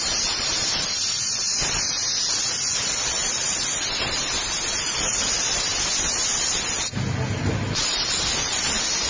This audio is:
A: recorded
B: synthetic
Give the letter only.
A